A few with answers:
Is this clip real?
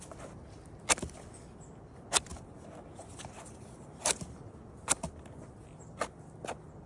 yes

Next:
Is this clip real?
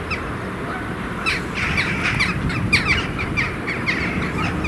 yes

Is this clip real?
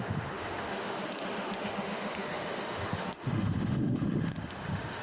no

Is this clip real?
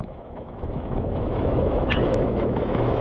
no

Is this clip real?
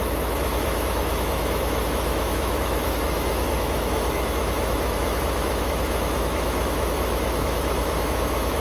no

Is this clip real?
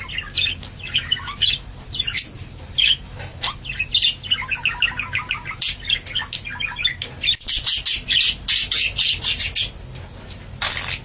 yes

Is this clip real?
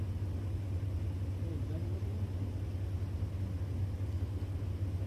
yes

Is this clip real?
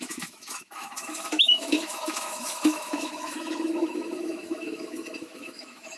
no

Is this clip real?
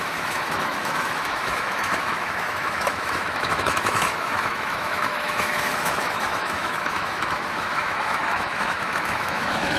no